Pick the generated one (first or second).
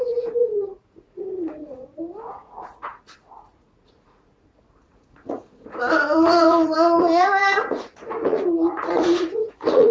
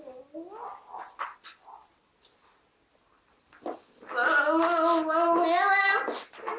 first